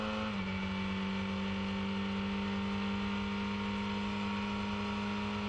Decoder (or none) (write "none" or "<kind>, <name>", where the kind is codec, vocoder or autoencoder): none